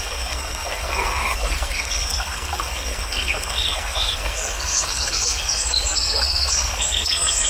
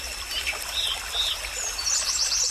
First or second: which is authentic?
second